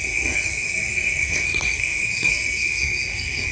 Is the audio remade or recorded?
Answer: remade